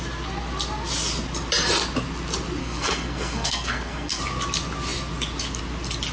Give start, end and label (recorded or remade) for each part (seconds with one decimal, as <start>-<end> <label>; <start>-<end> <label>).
0.0-2.6 recorded; 2.6-4.2 remade; 4.2-6.1 recorded